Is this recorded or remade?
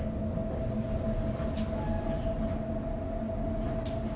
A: recorded